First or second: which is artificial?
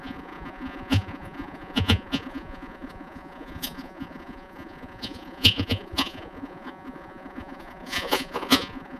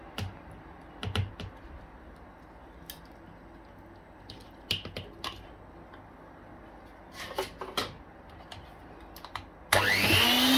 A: first